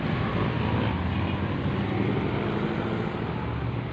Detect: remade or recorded recorded